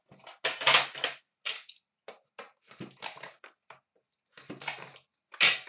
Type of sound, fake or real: real